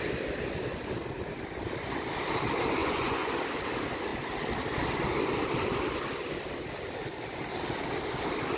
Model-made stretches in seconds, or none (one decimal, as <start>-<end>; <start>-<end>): 2.8-3.3